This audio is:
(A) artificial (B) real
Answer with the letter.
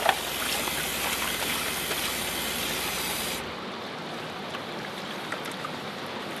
B